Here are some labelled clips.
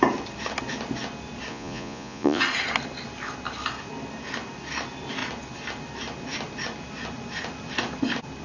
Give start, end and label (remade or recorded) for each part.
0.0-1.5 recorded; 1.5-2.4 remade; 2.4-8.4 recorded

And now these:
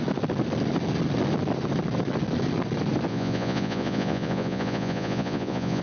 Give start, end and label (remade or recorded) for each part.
0.0-3.1 recorded; 3.1-5.8 remade

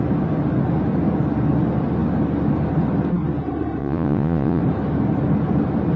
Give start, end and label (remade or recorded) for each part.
0.0-3.8 recorded; 3.8-4.6 remade; 4.6-6.0 recorded